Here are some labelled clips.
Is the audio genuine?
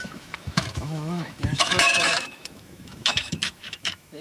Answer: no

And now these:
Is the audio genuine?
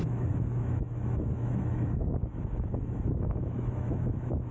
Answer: no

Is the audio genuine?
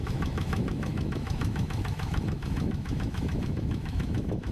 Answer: no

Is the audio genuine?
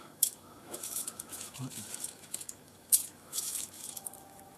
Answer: no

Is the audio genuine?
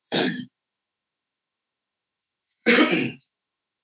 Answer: no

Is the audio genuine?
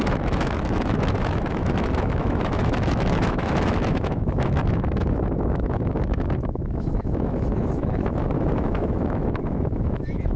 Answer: no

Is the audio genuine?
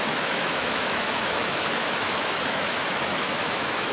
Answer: no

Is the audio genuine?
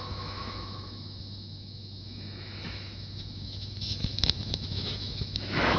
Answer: no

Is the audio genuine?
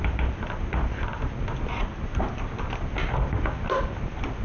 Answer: yes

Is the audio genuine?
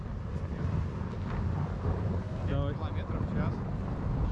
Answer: yes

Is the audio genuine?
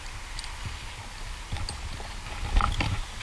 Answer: yes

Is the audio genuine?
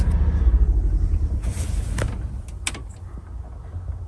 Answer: yes